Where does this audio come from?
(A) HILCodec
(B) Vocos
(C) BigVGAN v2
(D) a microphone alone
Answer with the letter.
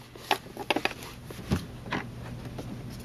D